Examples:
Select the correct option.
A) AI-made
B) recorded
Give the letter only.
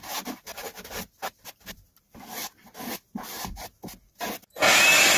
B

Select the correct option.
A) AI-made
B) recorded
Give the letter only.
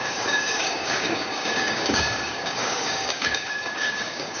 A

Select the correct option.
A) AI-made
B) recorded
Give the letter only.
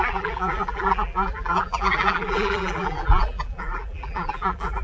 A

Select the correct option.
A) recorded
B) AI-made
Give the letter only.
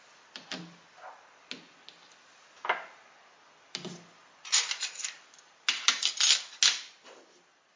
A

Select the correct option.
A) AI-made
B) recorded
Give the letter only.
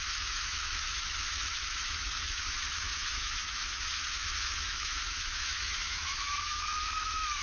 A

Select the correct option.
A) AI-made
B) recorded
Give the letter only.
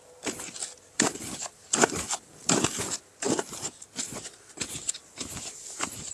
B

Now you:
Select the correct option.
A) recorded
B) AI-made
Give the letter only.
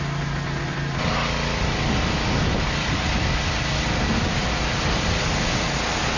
A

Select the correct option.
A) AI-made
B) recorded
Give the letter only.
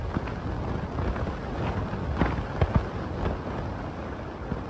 B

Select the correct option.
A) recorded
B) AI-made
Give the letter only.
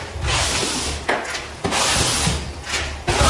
A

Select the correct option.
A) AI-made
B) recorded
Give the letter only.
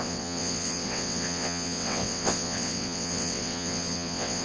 A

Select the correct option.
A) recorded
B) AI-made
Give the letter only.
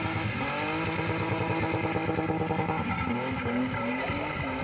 A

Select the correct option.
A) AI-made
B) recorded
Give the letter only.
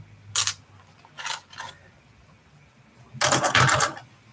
B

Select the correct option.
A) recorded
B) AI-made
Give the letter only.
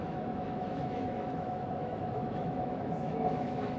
B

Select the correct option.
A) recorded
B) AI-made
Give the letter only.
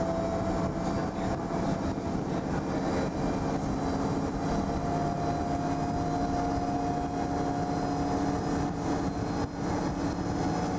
A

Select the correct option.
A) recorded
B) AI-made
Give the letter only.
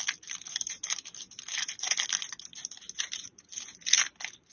A